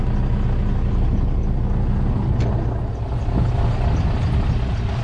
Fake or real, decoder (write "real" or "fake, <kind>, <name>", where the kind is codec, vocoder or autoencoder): real